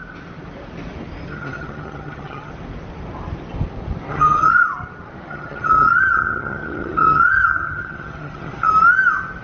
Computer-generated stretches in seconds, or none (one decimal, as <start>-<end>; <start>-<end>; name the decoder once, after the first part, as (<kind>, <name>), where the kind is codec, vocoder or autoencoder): 1.3-2.5 (vocoder, HiFi-GAN); 4.1-4.6; 5.3-8.7